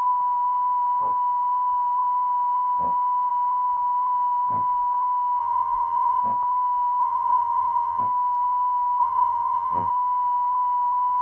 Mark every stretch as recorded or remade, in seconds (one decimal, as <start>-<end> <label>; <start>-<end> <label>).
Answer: 0.0-5.4 recorded; 5.4-6.2 remade; 6.2-7.0 recorded; 7.0-8.0 remade; 8.0-9.0 recorded; 9.0-9.9 remade; 9.9-11.2 recorded